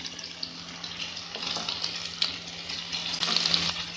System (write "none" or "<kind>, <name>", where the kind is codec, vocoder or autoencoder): none